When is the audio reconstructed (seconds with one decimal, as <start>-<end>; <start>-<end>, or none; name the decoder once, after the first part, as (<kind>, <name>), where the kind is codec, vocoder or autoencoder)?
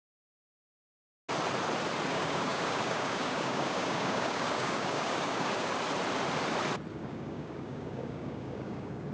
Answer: 2.1-5.7 (codec, DAC); 6.9-9.1